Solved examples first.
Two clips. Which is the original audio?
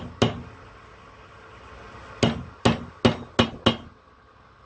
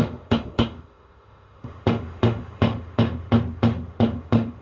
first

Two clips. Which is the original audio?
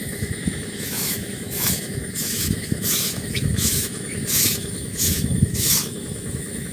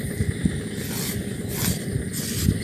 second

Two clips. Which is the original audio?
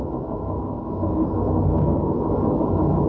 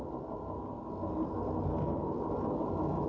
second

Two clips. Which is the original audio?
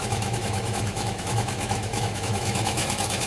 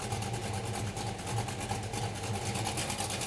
second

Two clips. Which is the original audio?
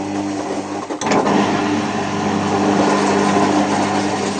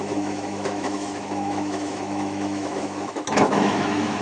first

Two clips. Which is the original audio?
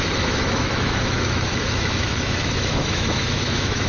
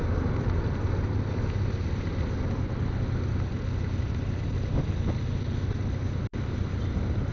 second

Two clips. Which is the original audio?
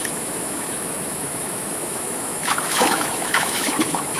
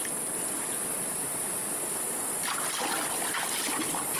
second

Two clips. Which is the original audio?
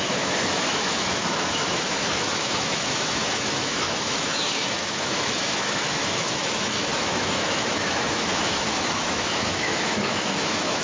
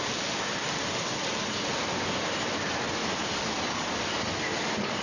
second